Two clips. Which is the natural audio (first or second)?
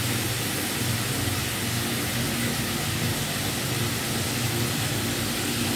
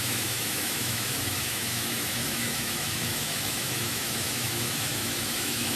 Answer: first